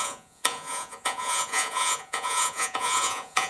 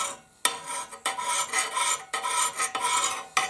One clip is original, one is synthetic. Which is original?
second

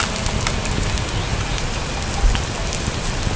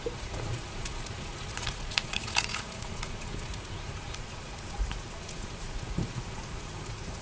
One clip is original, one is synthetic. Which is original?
first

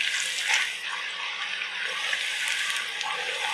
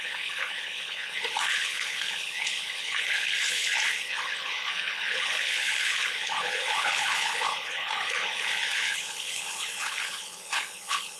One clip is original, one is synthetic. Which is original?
first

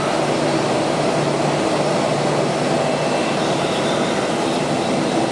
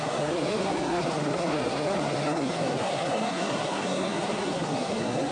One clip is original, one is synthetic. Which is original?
first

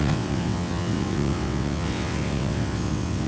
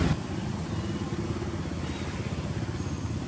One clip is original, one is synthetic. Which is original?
second